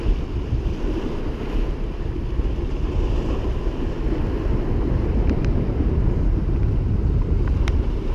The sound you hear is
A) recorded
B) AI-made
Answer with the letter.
A